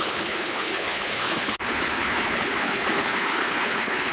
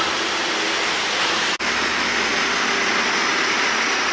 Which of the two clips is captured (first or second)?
second